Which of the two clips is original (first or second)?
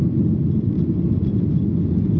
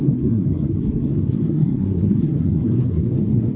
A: first